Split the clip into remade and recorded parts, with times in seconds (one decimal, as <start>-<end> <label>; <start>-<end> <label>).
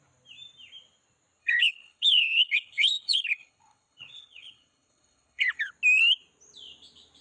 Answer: 0.0-1.4 recorded; 1.4-5.7 remade; 5.7-7.2 recorded